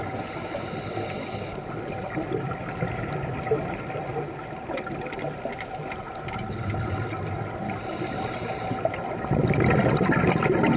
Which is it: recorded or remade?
recorded